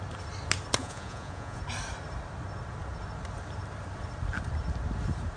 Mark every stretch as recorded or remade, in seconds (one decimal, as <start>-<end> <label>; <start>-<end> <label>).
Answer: 0.0-0.8 recorded; 0.8-1.6 remade; 1.6-5.4 recorded